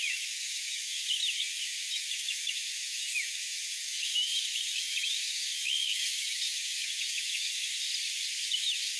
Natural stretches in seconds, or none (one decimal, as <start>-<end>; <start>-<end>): 7.7-8.4